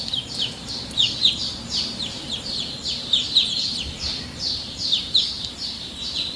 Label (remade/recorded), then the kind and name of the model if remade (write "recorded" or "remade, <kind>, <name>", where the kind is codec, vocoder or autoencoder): remade, vocoder, BigVGAN v2